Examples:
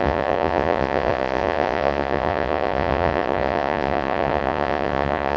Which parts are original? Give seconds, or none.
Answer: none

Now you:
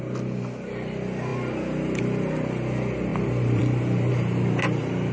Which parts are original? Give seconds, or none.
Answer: 0.0-3.1; 3.6-5.1

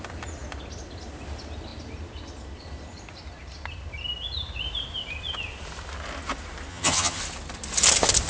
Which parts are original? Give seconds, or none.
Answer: 0.0-6.7; 7.2-8.3

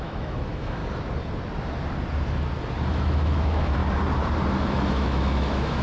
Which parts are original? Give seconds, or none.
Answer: 0.8-2.9; 3.8-4.7